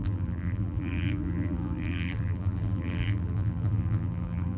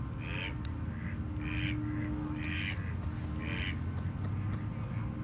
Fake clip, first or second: first